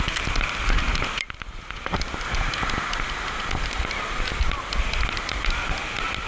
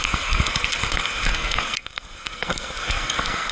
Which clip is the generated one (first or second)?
second